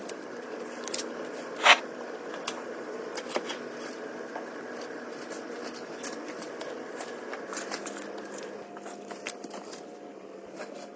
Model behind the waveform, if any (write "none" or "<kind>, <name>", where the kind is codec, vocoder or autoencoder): none